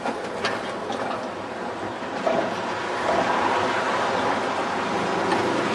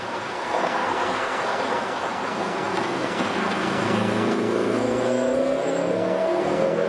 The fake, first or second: second